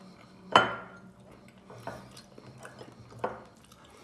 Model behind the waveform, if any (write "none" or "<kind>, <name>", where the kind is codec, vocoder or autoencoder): none